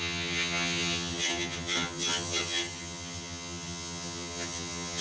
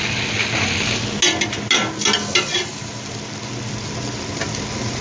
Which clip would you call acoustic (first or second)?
second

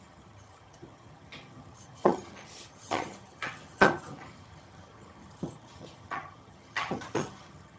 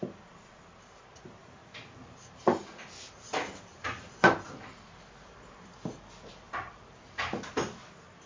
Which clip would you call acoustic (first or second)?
second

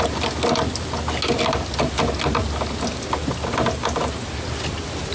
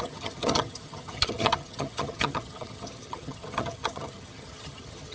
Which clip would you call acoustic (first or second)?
first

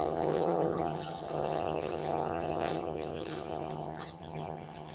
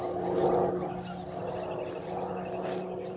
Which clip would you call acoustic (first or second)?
second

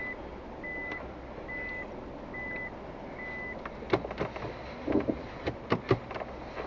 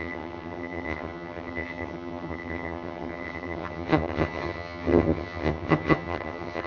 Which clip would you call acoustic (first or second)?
first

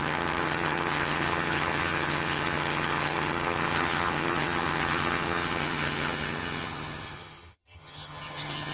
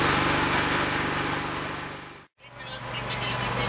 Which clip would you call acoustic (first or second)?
second